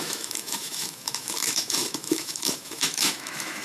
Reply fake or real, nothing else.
fake